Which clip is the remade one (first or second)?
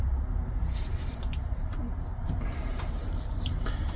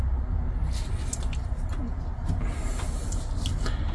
first